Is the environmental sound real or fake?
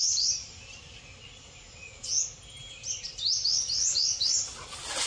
real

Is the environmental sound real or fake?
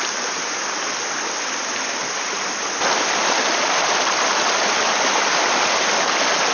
real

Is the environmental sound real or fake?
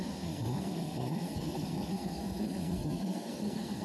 fake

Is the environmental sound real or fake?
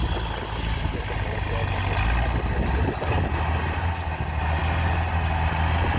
real